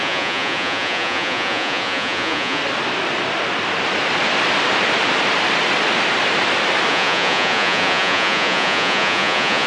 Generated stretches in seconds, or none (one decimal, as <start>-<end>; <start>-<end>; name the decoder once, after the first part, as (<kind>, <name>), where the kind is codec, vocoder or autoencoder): 0.0-2.6 (vocoder, Vocos); 6.9-9.7